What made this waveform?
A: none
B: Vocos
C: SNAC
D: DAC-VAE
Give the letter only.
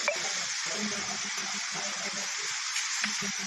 A